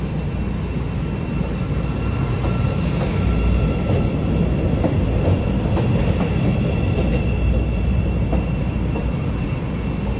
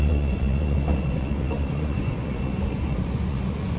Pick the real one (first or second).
first